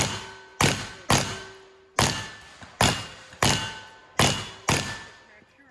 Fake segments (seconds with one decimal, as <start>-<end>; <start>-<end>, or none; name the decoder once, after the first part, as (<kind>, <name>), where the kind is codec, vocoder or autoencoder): 0.0-0.5 (vocoder, BigVGAN v2); 2.9-4.0; 4.6-5.7